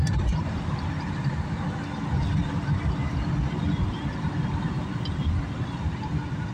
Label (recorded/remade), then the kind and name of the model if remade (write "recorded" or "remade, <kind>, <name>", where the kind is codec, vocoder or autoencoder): recorded